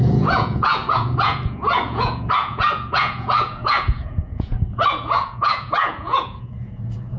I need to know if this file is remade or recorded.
remade